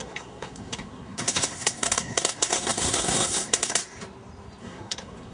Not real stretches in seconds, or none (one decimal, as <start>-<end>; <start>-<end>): 0.0-3.8; 4.6-5.3